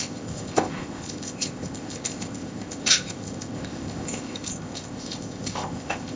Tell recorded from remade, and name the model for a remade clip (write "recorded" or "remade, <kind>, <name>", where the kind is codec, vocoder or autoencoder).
remade, codec, ZipCodec